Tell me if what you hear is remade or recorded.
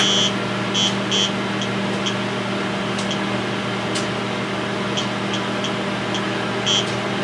recorded